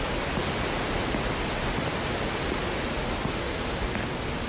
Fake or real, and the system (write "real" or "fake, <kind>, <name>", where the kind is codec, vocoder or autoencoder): real